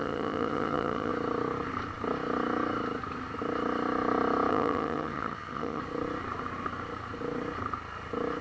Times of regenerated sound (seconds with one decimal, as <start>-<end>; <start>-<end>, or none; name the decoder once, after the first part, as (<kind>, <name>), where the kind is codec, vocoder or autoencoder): 0.0-1.1 (vocoder, HiFi-GAN); 4.5-5.8